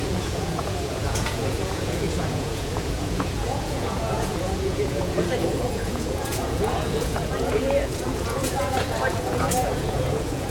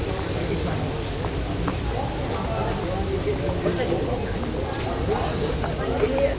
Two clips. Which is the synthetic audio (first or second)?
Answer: first